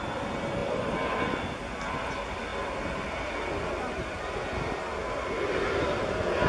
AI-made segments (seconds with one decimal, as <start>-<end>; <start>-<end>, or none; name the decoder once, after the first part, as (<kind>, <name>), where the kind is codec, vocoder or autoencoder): none